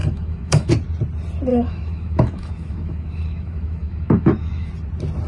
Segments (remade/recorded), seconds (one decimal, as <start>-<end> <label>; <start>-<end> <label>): 0.0-0.7 remade; 0.7-1.5 recorded; 1.5-4.7 remade; 4.7-5.3 recorded